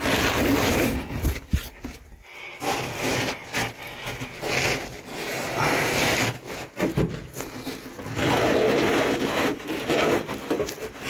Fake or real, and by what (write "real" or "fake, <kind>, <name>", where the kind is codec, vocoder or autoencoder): real